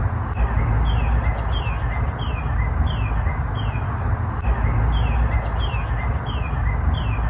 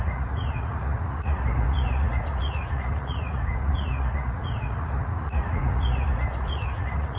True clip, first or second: first